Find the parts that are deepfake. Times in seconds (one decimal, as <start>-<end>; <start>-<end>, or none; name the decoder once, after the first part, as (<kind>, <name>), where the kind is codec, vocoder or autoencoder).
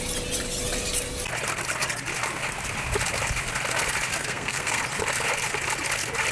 4.2-4.8 (codec, SNAC)